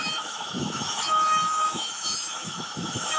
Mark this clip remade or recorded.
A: remade